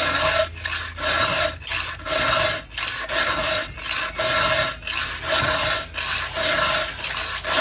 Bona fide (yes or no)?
yes